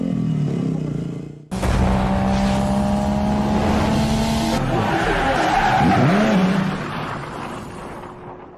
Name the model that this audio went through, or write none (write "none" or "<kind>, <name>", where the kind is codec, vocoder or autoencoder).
none